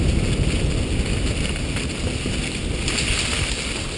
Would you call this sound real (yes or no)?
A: yes